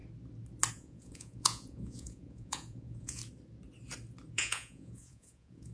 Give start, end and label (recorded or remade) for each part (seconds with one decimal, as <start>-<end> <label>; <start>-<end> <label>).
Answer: 0.0-0.7 recorded; 0.7-3.2 remade; 3.2-4.3 recorded; 4.3-5.7 remade